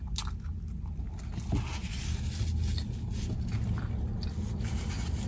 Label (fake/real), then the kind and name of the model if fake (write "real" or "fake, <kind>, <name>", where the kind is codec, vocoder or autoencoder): real